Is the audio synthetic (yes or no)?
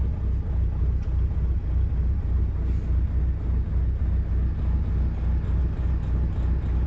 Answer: no